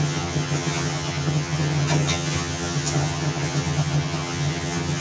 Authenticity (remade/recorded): remade